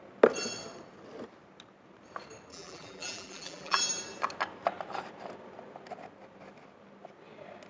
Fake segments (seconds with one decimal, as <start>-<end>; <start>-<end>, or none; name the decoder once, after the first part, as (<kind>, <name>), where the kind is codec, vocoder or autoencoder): 2.5-3.8 (vocoder, BigVGAN v2)